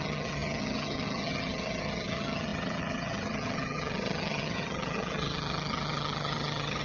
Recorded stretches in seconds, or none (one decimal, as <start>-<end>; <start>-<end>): none